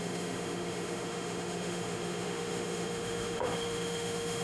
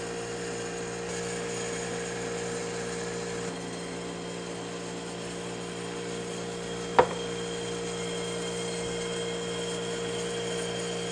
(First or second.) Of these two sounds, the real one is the second